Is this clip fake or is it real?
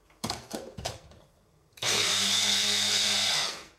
fake